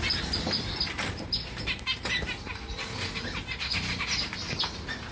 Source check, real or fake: real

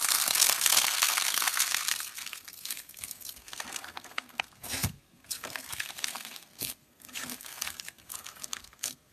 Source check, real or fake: fake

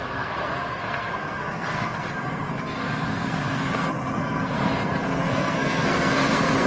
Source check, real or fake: fake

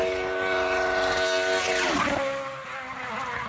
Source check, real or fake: real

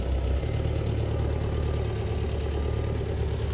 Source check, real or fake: real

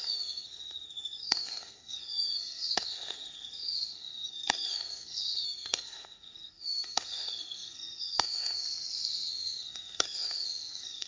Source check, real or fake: fake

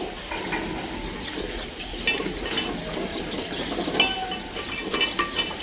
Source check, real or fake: real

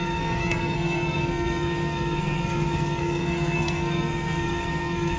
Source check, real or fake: fake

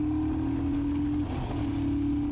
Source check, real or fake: real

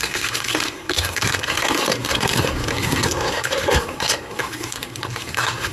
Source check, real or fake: fake